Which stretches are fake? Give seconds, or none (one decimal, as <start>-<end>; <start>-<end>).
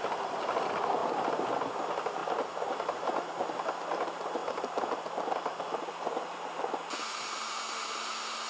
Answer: none